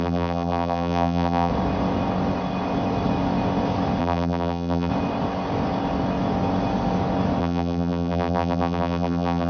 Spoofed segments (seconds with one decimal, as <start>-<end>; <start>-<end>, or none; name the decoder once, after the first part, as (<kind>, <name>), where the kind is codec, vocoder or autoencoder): 0.0-1.5 (vocoder, BigVGAN v2); 4.0-4.9; 7.4-9.5